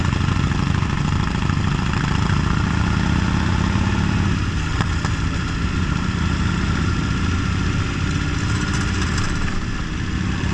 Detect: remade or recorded recorded